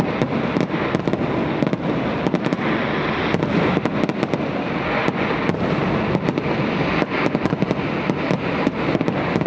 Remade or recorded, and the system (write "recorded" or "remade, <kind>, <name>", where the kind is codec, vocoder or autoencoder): recorded